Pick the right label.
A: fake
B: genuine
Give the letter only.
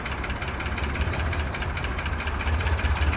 B